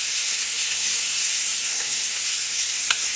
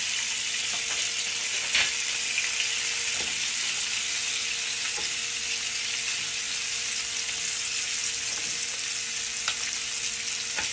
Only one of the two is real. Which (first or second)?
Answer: second